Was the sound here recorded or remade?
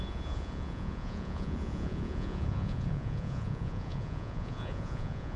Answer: remade